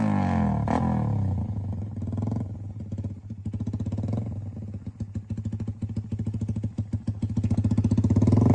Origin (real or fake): real